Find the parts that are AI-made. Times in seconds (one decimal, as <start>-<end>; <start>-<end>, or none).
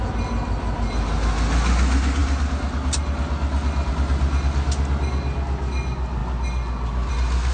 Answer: none